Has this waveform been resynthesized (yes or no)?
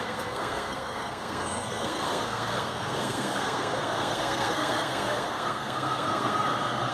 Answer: yes